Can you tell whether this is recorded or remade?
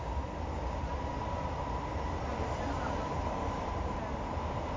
recorded